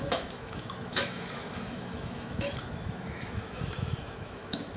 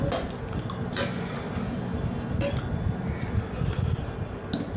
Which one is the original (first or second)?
second